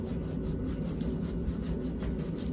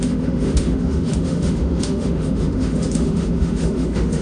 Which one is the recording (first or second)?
first